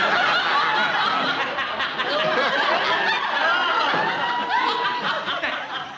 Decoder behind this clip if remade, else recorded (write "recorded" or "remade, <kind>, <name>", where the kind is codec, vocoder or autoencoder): recorded